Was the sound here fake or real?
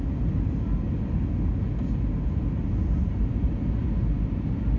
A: real